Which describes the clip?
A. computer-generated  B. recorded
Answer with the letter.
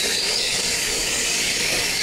A